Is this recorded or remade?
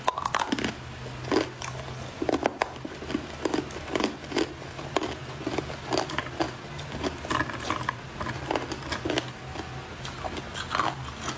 recorded